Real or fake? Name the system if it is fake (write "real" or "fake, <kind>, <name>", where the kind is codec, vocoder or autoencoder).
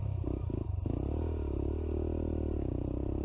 real